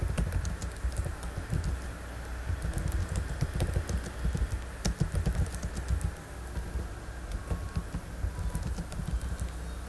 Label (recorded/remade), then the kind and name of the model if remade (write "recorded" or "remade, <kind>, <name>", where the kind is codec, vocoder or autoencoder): recorded